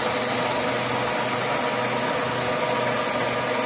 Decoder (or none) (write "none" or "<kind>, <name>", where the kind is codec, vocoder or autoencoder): none